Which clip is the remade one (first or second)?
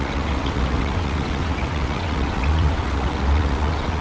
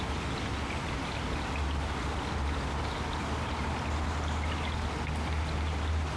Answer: first